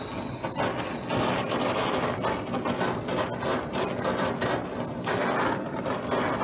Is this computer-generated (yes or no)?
no